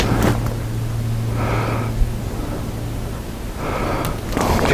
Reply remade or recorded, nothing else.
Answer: recorded